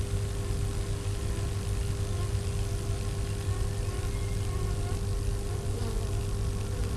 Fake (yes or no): no